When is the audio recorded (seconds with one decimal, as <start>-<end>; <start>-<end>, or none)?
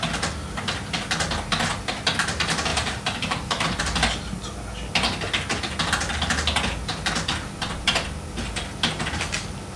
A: 0.0-2.7; 3.8-9.8